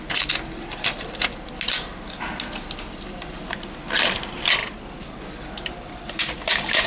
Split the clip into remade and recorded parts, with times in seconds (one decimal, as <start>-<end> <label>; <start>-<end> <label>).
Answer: 0.0-6.9 recorded